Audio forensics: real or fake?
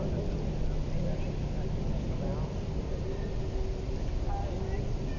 real